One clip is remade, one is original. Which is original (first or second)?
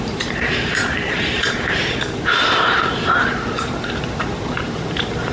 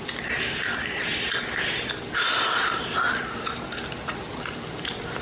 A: second